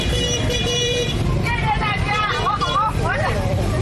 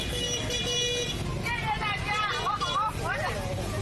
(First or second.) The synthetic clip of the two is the first